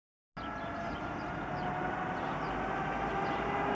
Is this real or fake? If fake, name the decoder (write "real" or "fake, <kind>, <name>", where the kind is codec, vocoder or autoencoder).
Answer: real